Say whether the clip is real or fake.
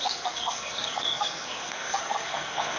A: fake